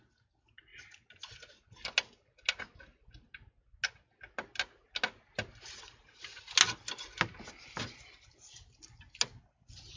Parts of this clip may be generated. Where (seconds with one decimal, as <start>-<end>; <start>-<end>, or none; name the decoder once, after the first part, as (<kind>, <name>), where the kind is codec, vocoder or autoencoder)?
none